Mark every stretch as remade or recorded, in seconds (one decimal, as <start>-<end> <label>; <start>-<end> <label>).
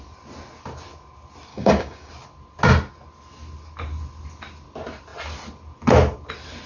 0.0-1.5 recorded; 1.5-2.1 remade; 2.1-6.7 recorded